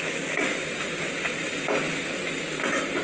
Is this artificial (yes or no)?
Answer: no